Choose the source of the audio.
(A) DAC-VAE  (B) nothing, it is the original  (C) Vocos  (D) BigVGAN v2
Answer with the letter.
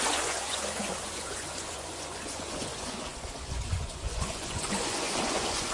C